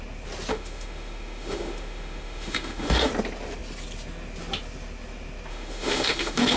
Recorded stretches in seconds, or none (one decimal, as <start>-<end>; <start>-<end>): 0.0-0.5; 3.1-5.5